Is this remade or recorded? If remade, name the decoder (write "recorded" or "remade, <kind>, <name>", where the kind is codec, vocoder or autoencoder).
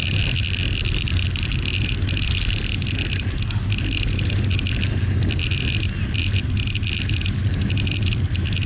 recorded